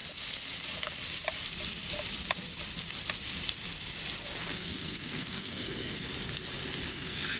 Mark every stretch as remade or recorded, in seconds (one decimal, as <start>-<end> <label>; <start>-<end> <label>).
0.0-4.4 recorded; 4.4-6.1 remade; 6.1-6.9 recorded; 6.9-7.4 remade